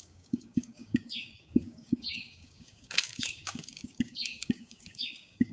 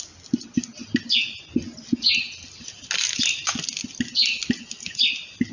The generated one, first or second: first